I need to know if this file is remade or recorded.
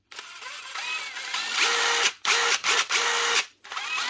recorded